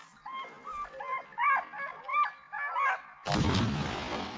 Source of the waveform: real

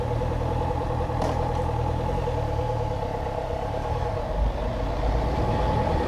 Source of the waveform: real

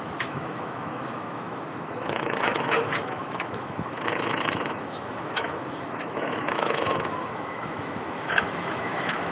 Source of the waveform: fake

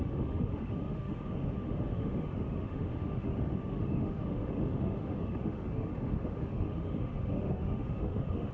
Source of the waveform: fake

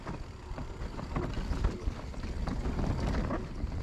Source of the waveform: real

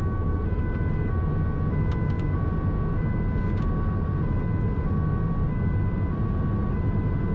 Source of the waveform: real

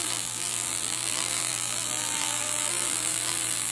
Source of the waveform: fake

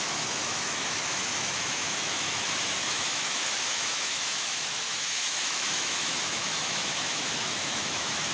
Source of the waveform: fake